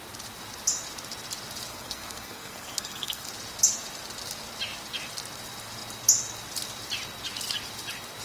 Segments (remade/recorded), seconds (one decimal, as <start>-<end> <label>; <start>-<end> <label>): 0.0-1.7 recorded; 1.7-3.3 remade; 3.3-8.2 recorded